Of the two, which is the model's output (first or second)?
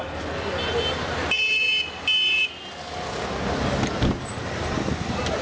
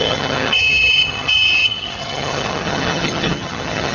second